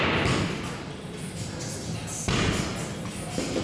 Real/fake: real